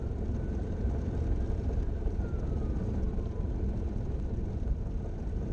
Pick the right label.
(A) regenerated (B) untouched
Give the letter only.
A